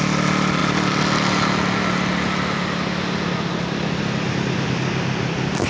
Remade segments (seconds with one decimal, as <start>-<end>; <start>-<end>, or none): none